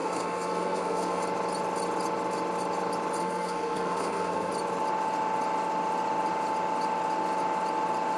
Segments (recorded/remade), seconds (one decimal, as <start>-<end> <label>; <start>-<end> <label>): 0.0-1.2 remade; 1.2-3.2 recorded; 3.2-4.5 remade; 4.5-8.2 recorded